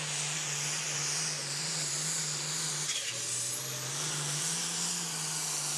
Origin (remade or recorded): recorded